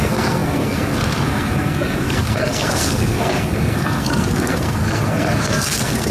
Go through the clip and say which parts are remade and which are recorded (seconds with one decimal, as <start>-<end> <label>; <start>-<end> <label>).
0.0-6.1 remade